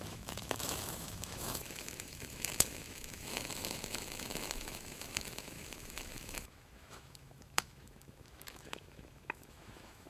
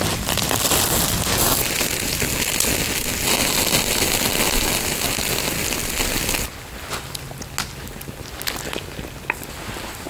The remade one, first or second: first